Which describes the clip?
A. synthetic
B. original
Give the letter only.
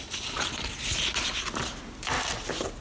B